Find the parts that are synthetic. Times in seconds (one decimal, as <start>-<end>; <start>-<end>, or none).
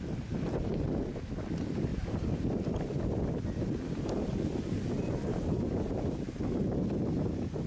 1.9-2.7; 5.3-6.4